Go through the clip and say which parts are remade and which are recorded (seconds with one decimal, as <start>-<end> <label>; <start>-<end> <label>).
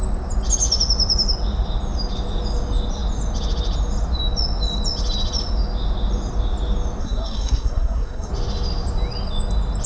0.0-7.0 recorded; 7.0-8.3 remade; 8.3-9.9 recorded